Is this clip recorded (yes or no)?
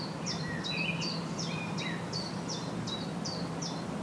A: yes